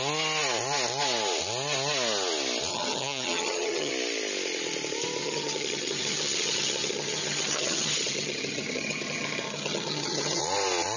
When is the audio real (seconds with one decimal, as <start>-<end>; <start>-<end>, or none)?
0.0-2.7; 3.9-5.2; 10.4-11.0

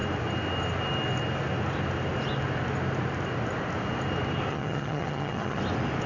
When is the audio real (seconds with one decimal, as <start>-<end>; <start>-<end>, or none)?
0.0-4.5; 5.6-6.1

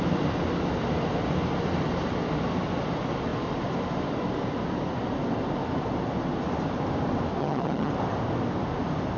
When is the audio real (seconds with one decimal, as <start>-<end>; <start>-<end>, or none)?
0.0-7.4; 7.9-9.2

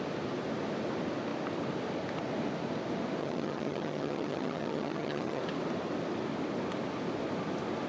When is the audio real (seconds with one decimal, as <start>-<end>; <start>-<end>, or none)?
0.0-3.2; 5.4-7.9

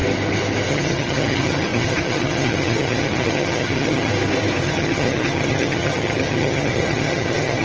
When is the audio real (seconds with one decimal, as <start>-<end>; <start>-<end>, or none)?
0.0-0.7; 4.1-4.6

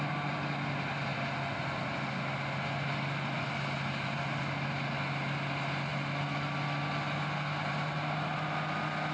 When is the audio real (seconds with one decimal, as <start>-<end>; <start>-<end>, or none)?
0.0-9.1

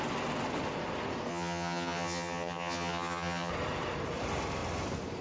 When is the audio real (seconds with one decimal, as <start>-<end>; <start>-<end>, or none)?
0.0-1.3; 3.5-5.2